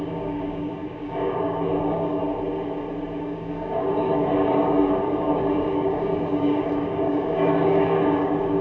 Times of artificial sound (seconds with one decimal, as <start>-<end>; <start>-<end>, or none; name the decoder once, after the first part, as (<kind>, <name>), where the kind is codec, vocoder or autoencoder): 0.0-2.2 (codec, DAC); 3.2-8.6